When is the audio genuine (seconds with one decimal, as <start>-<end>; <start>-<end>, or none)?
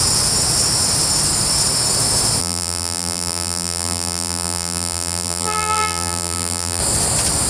0.0-2.4; 6.8-7.5